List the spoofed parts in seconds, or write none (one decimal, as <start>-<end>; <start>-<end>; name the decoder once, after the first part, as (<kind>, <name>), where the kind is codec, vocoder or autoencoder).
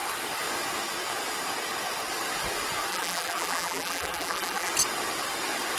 2.9-4.7 (vocoder, BigVGAN v2)